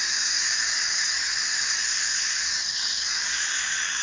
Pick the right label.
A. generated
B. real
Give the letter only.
A